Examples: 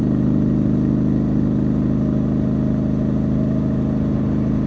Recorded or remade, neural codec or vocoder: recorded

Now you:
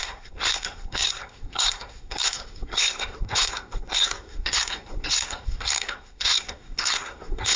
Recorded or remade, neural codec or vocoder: remade, codec, SNAC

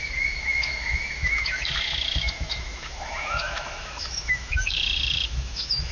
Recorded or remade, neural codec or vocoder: remade, autoencoder, DAC-VAE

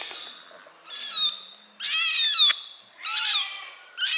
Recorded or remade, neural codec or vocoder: recorded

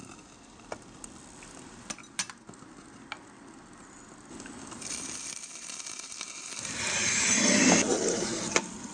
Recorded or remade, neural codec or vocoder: recorded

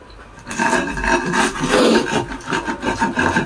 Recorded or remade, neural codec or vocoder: recorded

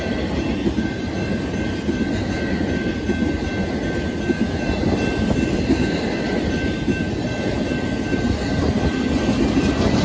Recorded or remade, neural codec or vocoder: recorded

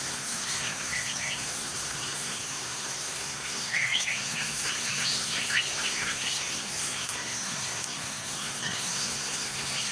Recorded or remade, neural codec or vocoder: remade, codec, SNAC